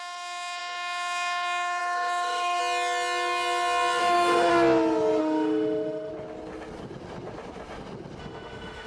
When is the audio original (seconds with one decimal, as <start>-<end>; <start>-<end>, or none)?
2.6-4.0; 4.5-5.2; 6.1-8.2